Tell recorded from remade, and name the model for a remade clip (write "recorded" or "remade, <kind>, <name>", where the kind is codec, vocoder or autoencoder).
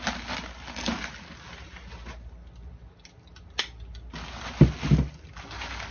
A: recorded